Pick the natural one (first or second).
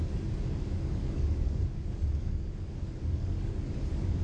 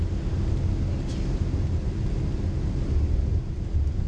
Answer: second